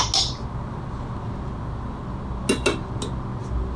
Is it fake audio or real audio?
real